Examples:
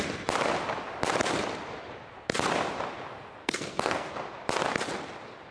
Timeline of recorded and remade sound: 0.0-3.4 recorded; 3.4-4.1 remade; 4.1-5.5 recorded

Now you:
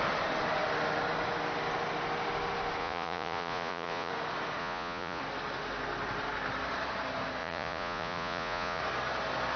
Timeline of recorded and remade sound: 0.0-2.8 recorded; 2.8-4.1 remade; 4.1-4.6 recorded; 4.6-5.2 remade; 5.2-7.4 recorded; 7.4-8.8 remade; 8.8-9.6 recorded

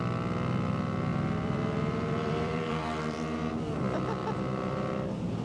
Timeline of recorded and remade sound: 0.0-1.1 recorded; 1.1-3.5 remade; 3.5-4.2 recorded; 4.2-4.9 remade; 4.9-5.4 recorded

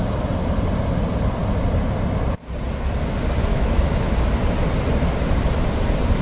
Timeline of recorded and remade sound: 0.0-3.5 recorded; 3.5-4.1 remade; 4.1-6.2 recorded